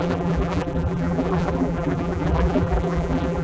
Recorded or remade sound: remade